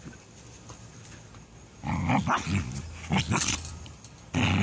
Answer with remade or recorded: recorded